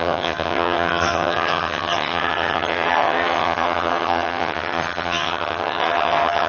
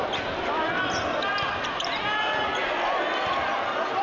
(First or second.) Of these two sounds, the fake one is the first